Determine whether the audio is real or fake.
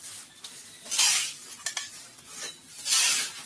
real